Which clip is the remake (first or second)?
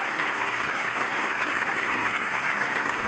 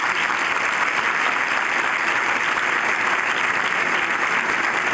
first